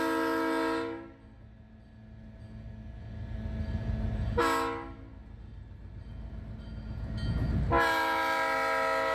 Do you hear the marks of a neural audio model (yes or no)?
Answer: no